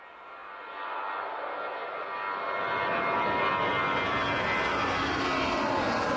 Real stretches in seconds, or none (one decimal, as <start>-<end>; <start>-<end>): 0.0-6.2